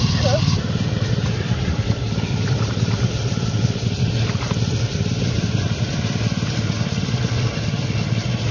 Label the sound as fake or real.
fake